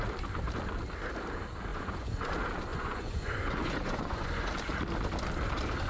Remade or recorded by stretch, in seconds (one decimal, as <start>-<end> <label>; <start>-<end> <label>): 0.0-1.7 recorded; 1.7-2.3 remade; 2.3-2.7 recorded; 2.7-4.5 remade; 4.5-5.9 recorded